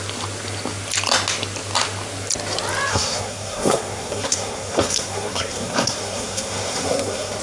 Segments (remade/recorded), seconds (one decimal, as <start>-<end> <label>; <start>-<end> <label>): 0.0-2.9 recorded; 2.9-7.4 remade